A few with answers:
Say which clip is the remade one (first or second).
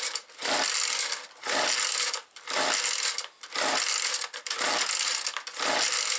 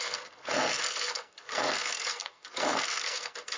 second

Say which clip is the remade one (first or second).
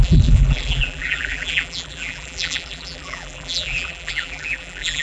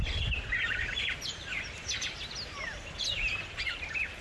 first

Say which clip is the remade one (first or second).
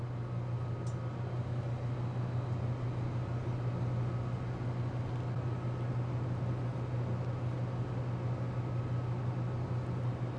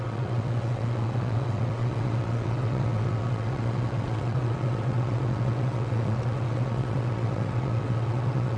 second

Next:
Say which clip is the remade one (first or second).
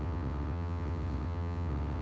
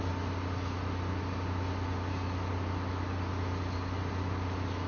first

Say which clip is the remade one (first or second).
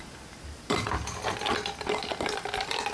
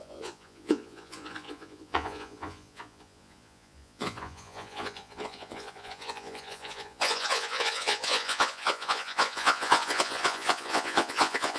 second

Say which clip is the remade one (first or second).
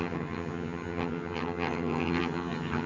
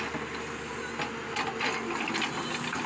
first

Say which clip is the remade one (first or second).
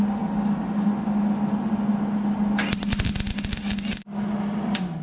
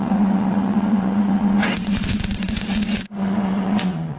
second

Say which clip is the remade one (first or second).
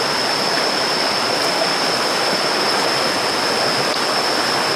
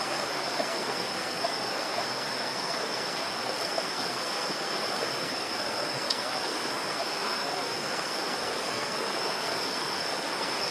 second